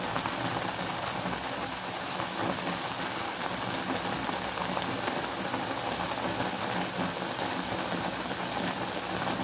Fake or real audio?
real